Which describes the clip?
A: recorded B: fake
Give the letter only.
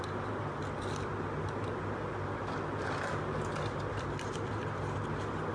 A